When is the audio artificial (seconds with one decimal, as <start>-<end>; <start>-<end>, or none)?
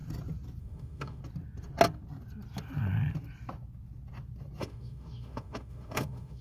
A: 0.6-1.2; 4.6-6.4